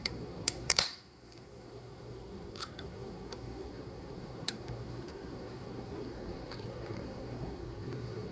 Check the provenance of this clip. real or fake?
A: fake